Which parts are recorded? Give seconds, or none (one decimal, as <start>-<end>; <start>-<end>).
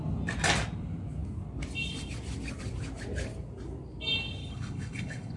0.0-4.4